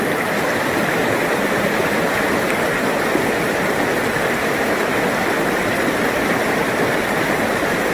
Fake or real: real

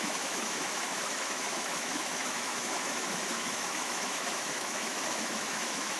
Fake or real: fake